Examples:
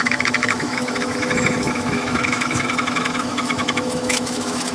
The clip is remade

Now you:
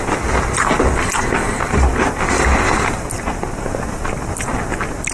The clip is recorded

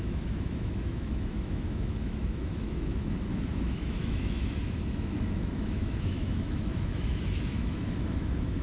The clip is remade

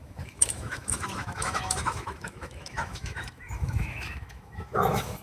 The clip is remade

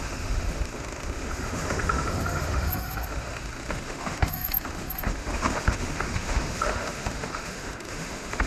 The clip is remade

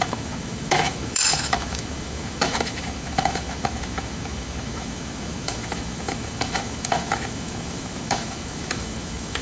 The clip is remade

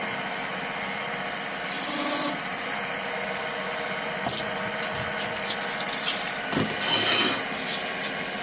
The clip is recorded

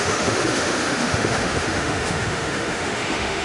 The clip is remade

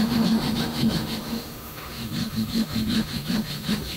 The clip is remade